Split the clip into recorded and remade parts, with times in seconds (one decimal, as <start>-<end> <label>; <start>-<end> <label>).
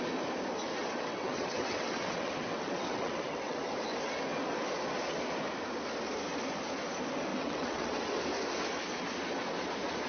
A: 0.0-0.8 recorded; 0.8-3.7 remade; 3.7-7.3 recorded; 7.3-8.2 remade; 8.2-10.1 recorded